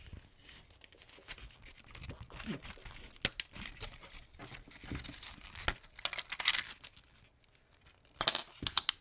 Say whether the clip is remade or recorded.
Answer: recorded